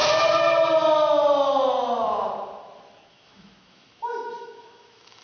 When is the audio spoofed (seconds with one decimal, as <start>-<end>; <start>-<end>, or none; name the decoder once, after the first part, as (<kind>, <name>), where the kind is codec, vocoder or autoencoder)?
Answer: 3.1-5.2 (autoencoder, DAC-VAE)

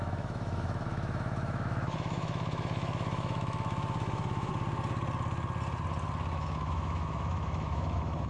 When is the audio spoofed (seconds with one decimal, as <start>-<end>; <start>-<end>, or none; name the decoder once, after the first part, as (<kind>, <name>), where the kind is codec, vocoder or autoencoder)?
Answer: 0.0-4.5 (autoencoder, DAC-VAE); 6.4-8.3

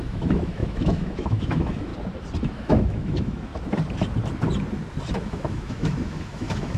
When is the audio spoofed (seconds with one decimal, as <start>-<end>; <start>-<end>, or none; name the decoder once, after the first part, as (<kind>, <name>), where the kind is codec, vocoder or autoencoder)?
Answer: 0.0-1.9 (autoencoder, DAC-VAE); 2.4-3.5; 5.1-6.8

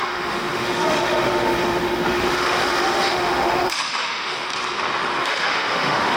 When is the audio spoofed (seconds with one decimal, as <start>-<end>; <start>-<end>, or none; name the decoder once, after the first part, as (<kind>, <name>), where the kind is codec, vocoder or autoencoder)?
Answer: 0.0-4.5 (autoencoder, DAC-VAE); 5.2-6.2

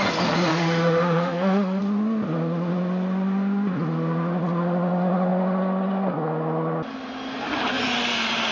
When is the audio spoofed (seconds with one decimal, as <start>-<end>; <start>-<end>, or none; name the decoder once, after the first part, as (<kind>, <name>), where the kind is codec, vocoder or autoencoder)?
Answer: 0.5-1.8 (autoencoder, DAC-VAE)